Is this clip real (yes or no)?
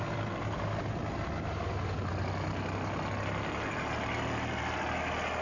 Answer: yes